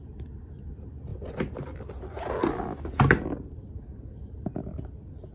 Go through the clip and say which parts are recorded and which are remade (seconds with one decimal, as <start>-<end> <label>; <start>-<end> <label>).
0.0-5.3 recorded